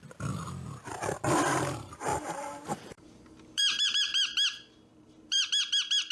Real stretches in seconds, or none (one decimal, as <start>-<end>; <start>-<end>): 0.0-2.1; 3.9-4.9; 5.5-6.1